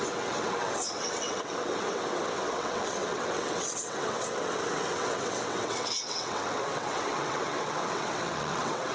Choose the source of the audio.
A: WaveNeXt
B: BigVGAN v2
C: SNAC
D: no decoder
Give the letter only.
A